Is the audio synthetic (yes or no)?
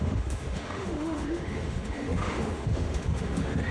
yes